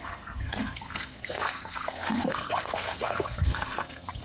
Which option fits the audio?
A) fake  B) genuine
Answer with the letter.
A